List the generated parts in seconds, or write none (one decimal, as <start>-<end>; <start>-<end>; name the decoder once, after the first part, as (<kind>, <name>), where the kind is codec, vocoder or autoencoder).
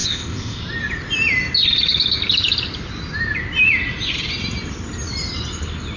0.0-0.6 (codec, ZipCodec)